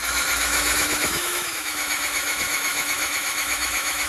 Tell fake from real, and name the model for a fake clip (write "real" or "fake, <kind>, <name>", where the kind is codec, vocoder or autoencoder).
fake, autoencoder, DAC-VAE